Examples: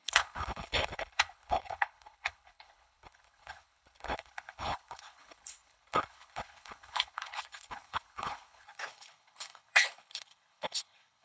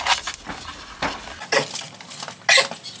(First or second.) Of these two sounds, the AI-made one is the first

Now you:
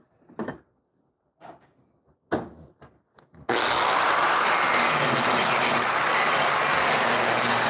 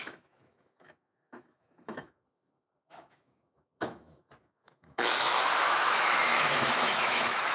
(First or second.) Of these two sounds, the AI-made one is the second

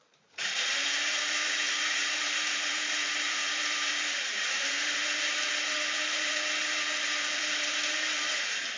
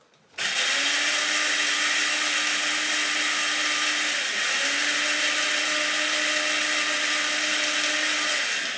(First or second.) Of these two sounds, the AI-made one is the first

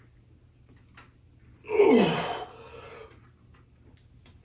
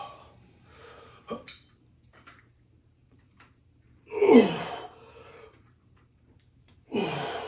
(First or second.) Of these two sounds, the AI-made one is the second